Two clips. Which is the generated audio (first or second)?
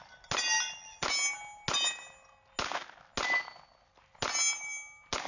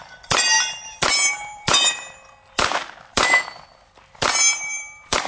second